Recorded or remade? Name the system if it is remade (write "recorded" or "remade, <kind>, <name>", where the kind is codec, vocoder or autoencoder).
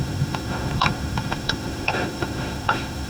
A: remade, autoencoder, DAC-VAE